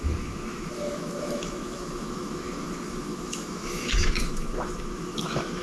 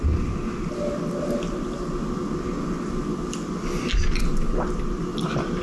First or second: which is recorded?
second